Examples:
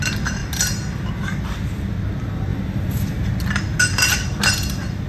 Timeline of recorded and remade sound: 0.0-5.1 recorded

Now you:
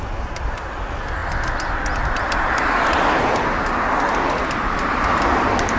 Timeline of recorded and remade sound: 0.0-5.8 recorded

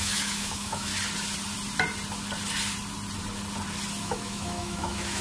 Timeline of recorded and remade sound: 0.0-0.9 remade; 0.9-4.0 recorded; 4.0-5.2 remade

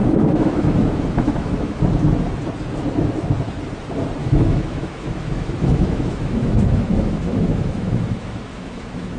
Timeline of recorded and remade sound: 0.0-1.8 remade; 1.8-4.2 recorded; 4.2-9.2 remade

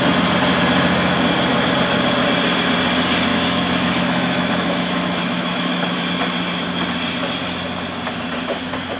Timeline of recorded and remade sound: 0.0-3.3 recorded; 3.3-6.1 remade; 6.1-9.0 recorded

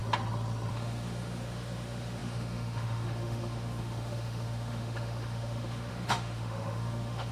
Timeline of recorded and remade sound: 0.0-0.7 recorded; 0.7-7.3 remade

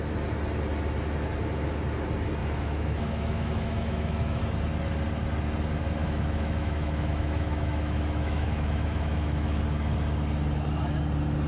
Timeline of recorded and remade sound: 0.0-2.4 recorded; 2.4-4.4 remade; 4.4-6.0 recorded; 6.0-9.6 remade; 9.6-11.5 recorded

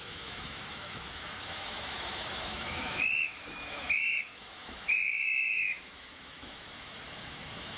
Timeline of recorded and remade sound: 0.0-7.8 remade